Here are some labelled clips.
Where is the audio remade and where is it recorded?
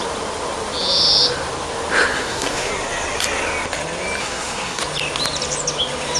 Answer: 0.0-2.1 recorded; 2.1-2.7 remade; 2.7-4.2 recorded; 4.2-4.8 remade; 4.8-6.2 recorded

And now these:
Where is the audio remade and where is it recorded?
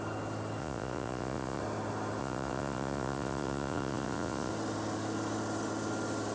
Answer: 0.0-0.6 recorded; 0.6-1.6 remade; 1.6-2.2 recorded; 2.2-4.5 remade; 4.5-6.3 recorded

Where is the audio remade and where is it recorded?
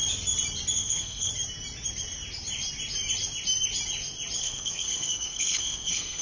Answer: 0.0-0.7 recorded; 0.7-1.3 remade; 1.3-4.4 recorded; 4.4-6.2 remade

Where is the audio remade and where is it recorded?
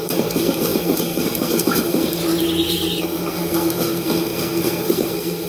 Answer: 0.0-2.2 remade; 2.2-3.0 recorded; 3.0-5.5 remade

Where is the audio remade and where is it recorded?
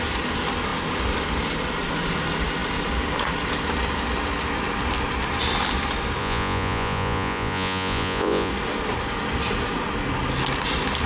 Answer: 0.0-6.2 recorded; 6.2-8.5 remade; 8.5-11.1 recorded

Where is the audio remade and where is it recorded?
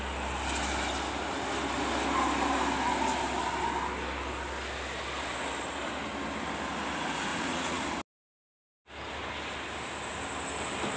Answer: 0.0-7.3 recorded; 7.3-7.9 remade; 7.9-11.0 recorded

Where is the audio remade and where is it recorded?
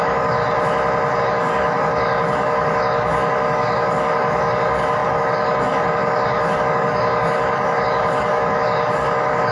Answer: 0.0-0.4 remade; 0.4-1.2 recorded; 1.2-9.5 remade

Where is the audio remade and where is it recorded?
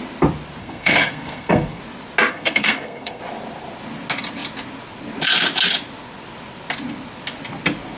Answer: 0.0-0.6 recorded; 0.6-1.8 remade; 1.8-2.3 recorded; 2.3-3.2 remade; 3.2-8.0 recorded